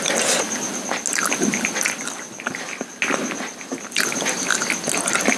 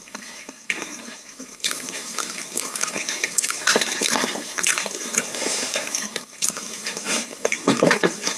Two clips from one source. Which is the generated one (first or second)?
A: second